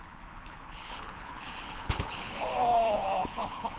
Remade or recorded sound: remade